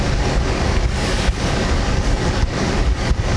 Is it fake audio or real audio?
fake